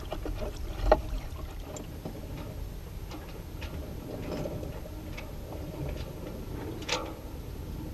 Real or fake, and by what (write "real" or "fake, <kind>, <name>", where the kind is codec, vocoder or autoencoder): real